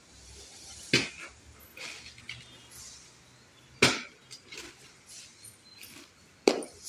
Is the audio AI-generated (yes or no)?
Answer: no